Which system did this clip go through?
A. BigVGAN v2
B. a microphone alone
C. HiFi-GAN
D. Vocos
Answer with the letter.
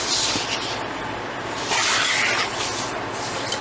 B